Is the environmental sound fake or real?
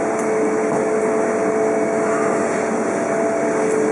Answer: real